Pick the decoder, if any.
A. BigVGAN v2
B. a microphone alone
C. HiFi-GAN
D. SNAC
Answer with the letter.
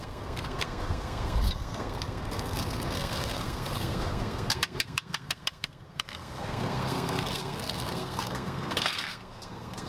D